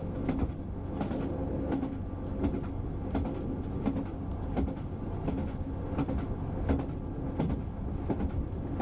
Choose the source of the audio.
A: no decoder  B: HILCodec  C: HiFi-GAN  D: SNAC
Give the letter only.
A